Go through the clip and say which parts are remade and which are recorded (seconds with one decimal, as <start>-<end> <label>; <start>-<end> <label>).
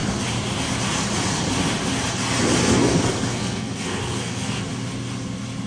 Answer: 0.0-2.6 recorded; 2.6-4.6 remade; 4.6-5.7 recorded